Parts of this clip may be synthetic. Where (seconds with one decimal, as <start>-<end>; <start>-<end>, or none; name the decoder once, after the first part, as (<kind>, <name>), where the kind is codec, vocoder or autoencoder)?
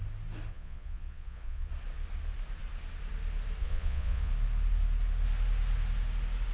0.5-1.7 (vocoder, Vocos); 3.6-4.3